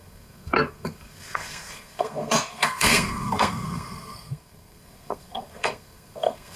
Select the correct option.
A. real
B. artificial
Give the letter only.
B